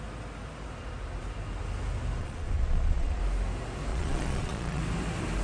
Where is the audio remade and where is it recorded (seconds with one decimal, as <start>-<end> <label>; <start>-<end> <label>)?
0.0-2.2 recorded; 2.2-3.2 remade; 3.2-3.9 recorded; 3.9-4.8 remade; 4.8-5.4 recorded

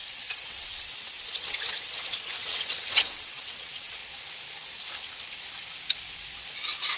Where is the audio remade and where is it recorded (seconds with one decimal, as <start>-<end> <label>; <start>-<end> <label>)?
0.0-4.0 remade; 4.0-6.6 recorded; 6.6-7.0 remade

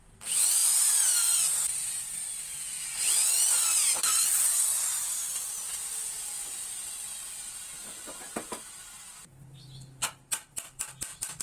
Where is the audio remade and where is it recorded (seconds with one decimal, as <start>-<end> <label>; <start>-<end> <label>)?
0.0-11.4 recorded

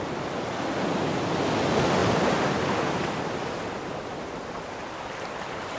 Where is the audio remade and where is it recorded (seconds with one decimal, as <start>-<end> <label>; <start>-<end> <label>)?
0.0-5.8 recorded

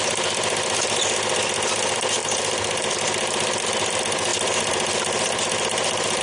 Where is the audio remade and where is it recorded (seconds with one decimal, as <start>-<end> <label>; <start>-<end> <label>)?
0.0-6.2 recorded

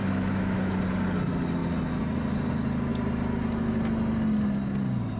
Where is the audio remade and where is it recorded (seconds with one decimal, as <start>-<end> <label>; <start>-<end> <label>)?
0.0-0.8 remade; 0.8-5.2 recorded

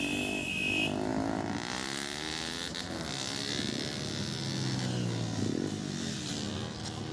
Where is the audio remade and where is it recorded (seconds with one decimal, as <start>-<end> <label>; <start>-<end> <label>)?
0.0-7.1 recorded

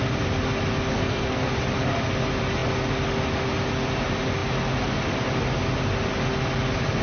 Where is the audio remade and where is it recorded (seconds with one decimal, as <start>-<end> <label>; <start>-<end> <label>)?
0.0-0.9 recorded; 0.9-1.5 remade; 1.5-7.0 recorded